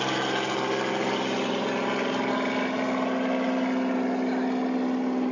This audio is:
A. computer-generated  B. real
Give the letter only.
B